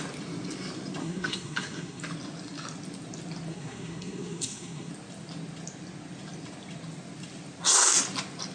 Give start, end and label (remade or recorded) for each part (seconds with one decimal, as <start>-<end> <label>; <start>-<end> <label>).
0.0-1.0 recorded; 1.0-2.0 remade; 2.0-3.5 recorded; 3.5-4.9 remade; 4.9-8.5 recorded